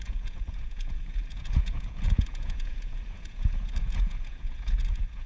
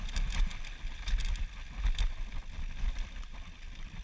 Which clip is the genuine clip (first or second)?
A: second